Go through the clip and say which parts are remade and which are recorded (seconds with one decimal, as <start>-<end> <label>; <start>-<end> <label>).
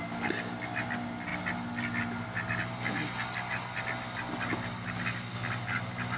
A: 0.0-6.2 recorded